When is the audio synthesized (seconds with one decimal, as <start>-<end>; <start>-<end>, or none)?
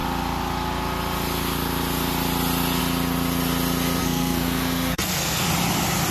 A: 4.0-5.5